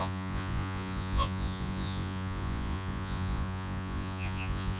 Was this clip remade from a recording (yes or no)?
yes